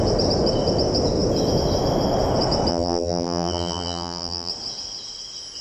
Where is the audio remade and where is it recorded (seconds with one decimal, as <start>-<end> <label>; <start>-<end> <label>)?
0.0-2.7 recorded; 2.7-4.5 remade; 4.5-5.6 recorded